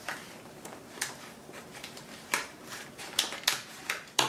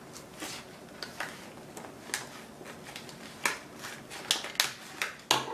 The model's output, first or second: first